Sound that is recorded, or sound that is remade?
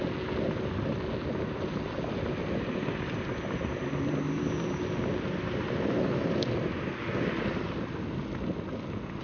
recorded